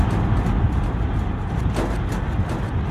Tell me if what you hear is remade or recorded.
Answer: recorded